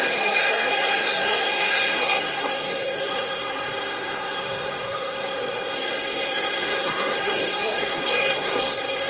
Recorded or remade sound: remade